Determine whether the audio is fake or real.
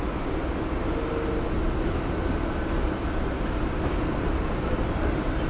real